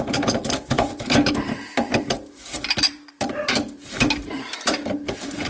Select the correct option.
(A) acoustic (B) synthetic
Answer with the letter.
B